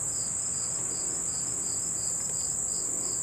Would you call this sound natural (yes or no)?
yes